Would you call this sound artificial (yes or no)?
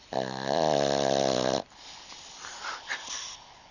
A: no